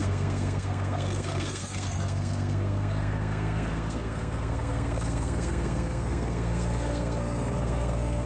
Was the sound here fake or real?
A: fake